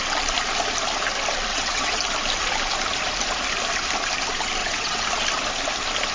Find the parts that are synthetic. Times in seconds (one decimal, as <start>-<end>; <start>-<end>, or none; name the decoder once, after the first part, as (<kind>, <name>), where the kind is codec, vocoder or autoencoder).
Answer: 1.5-2.0 (vocoder, WaveNeXt); 4.6-5.1